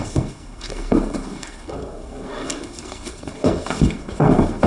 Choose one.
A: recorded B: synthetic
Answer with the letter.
B